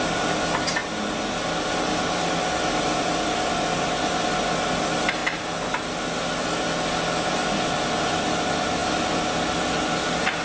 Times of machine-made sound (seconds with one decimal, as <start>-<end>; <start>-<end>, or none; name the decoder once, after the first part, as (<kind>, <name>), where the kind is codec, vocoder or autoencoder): none